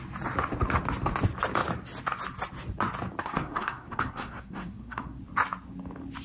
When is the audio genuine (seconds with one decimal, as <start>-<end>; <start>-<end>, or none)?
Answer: 0.0-3.2; 5.2-6.2